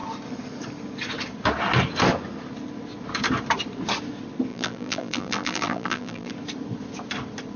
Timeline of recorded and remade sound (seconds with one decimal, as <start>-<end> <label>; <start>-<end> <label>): 0.0-4.5 recorded; 4.5-6.3 remade; 6.3-7.6 recorded